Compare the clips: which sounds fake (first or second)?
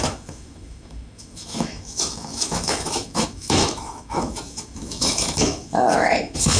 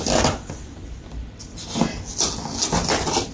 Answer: first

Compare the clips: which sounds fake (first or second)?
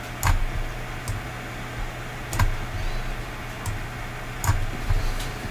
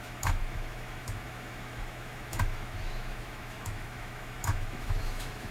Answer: second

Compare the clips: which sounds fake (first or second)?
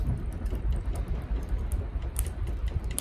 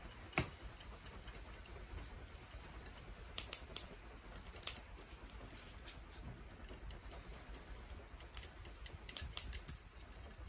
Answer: first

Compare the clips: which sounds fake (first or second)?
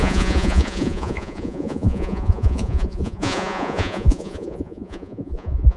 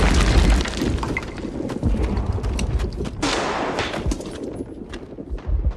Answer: first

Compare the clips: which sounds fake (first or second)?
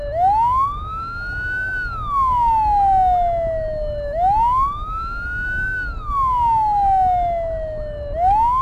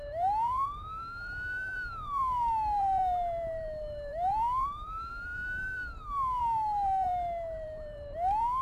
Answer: second